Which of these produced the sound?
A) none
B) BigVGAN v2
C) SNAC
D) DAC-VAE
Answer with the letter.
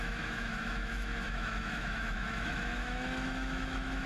D